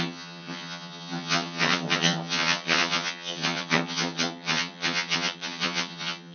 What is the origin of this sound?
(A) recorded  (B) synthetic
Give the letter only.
B